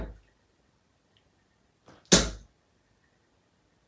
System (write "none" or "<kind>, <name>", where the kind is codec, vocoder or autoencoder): none